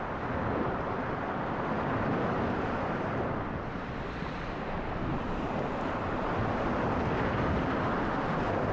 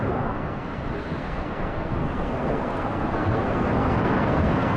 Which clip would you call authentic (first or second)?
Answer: first